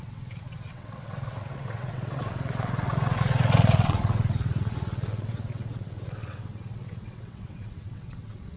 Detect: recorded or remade remade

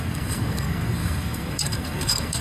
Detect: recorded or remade remade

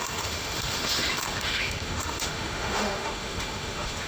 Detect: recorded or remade remade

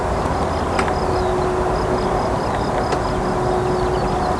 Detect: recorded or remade recorded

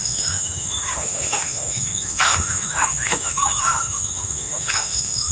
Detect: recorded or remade remade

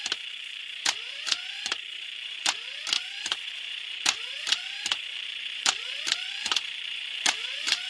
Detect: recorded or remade remade